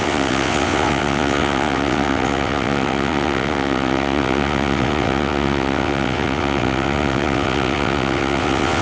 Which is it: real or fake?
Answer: fake